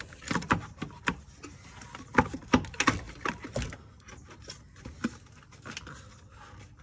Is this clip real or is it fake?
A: real